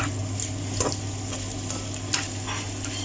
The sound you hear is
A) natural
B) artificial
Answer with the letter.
A